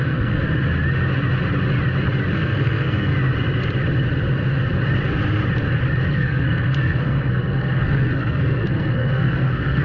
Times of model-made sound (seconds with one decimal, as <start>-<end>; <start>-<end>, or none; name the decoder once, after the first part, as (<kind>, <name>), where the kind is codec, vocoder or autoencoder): 0.0-0.4 (codec, SNAC); 2.3-3.1; 6.1-9.8